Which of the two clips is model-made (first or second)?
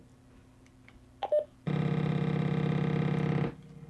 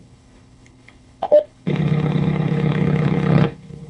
second